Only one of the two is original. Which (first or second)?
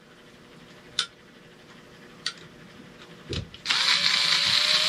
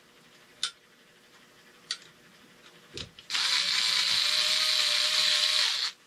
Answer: second